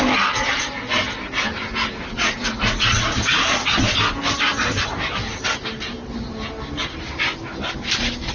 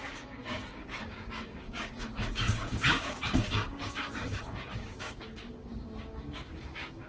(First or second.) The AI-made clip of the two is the second